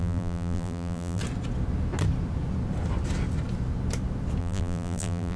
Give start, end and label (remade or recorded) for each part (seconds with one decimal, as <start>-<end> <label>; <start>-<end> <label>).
0.0-1.2 remade; 1.2-4.4 recorded; 4.4-5.4 remade